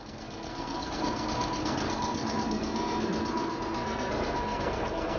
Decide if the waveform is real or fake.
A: fake